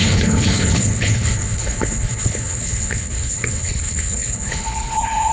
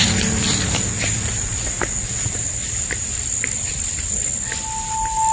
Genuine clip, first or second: second